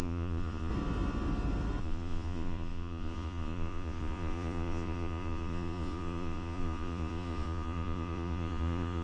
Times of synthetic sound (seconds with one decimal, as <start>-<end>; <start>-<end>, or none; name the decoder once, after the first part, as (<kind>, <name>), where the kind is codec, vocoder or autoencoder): 0.0-0.7 (vocoder, Vocos); 1.8-9.0